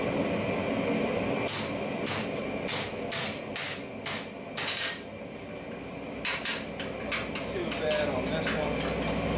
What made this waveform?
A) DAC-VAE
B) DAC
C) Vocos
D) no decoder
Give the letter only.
D